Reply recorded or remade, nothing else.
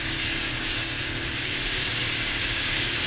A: remade